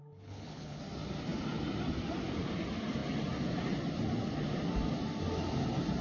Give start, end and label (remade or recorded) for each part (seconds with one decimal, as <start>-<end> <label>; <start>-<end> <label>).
0.0-0.8 remade; 0.8-6.0 recorded